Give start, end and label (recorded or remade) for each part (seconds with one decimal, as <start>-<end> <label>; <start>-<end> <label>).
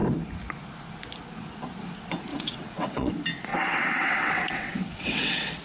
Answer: 0.0-2.3 recorded; 2.3-3.1 remade; 3.1-3.5 recorded; 3.5-5.6 remade